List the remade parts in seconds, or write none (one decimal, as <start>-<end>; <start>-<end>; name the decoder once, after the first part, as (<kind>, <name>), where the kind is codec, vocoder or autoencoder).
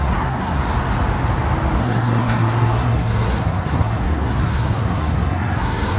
0.0-0.6 (codec, SNAC); 1.8-6.0